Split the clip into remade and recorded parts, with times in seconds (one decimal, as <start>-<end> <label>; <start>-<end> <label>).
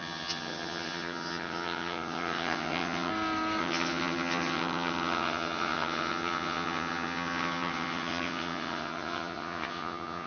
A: 0.0-3.1 remade; 3.1-3.6 recorded; 3.6-10.3 remade